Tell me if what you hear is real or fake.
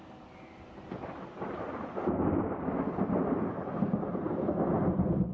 real